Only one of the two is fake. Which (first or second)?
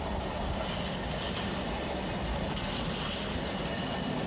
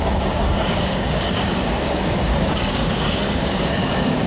second